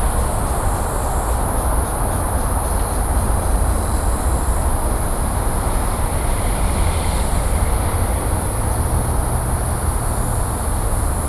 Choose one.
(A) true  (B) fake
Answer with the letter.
A